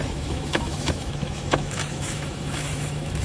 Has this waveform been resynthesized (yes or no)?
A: yes